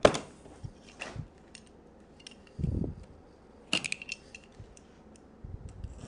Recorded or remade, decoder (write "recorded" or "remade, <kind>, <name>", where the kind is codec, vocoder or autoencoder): recorded